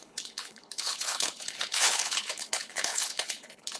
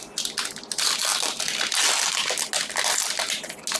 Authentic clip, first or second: second